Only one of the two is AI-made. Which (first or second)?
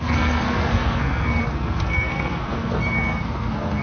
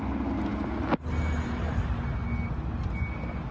first